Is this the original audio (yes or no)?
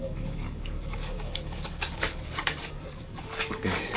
no